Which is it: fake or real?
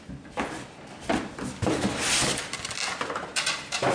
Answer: real